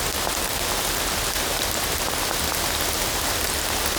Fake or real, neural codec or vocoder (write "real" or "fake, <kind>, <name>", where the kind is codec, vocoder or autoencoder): real